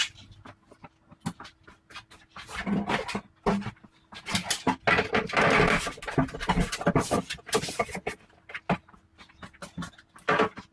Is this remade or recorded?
recorded